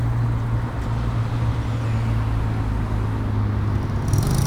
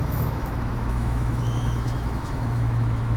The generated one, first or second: second